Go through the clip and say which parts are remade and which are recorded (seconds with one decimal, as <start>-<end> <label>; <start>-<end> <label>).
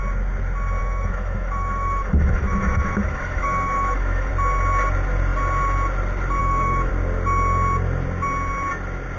0.0-0.8 recorded; 0.8-4.3 remade; 4.3-6.4 recorded; 6.4-6.9 remade; 6.9-9.2 recorded